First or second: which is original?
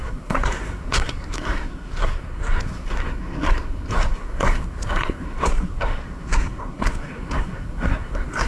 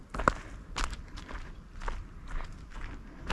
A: second